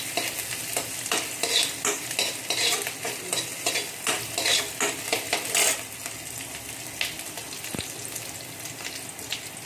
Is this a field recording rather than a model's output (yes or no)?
yes